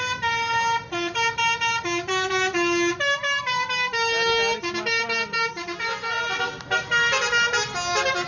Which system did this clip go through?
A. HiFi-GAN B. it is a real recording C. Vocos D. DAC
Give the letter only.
B